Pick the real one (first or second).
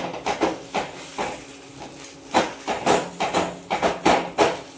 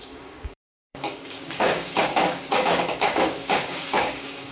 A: first